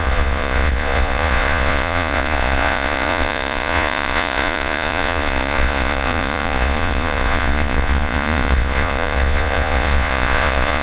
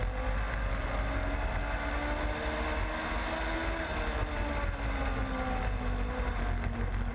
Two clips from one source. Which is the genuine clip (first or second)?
second